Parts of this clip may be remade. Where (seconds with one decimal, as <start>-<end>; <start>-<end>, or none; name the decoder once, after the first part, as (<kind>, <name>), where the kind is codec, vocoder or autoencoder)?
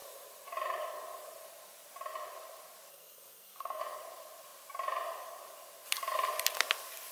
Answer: 2.9-3.8 (codec, SNAC)